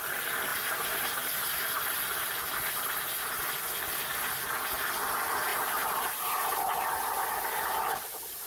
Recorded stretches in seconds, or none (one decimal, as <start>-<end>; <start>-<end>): 0.0-0.5; 1.7-5.5; 6.6-8.5